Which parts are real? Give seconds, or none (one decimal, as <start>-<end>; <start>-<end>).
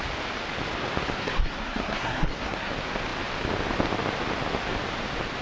0.0-1.2; 2.7-5.4